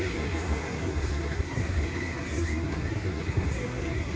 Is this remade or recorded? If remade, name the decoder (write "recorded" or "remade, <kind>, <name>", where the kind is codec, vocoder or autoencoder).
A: remade, codec, SNAC